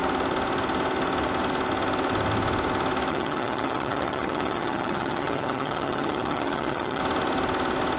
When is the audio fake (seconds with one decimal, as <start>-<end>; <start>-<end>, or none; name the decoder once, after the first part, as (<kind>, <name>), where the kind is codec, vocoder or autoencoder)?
3.1-7.0 (vocoder, HiFi-GAN)